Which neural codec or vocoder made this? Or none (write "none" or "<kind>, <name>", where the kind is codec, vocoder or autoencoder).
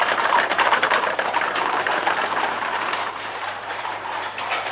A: vocoder, BigVGAN v2